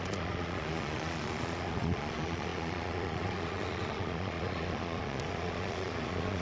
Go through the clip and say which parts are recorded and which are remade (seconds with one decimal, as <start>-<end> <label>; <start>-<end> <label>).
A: 0.0-6.4 remade

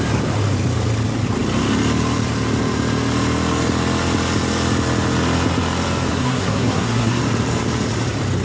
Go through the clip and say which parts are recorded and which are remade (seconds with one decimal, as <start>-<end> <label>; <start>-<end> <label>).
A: 0.0-6.1 recorded; 6.1-7.2 remade; 7.2-8.4 recorded